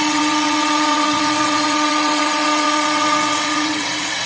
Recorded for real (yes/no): no